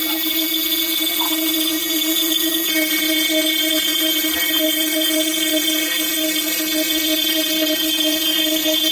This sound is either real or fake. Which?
fake